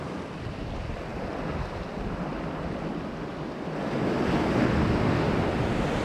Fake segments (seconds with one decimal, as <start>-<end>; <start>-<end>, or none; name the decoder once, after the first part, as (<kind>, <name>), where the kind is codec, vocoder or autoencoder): none